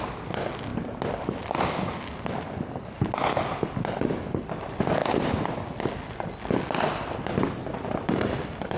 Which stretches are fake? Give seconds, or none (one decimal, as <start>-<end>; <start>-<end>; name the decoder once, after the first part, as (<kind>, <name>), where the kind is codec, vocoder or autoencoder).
none